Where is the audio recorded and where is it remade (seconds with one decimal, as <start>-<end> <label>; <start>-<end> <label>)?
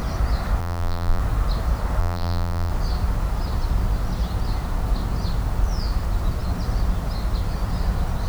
0.0-0.6 recorded; 0.6-1.2 remade; 1.2-2.0 recorded; 2.0-2.7 remade; 2.7-8.3 recorded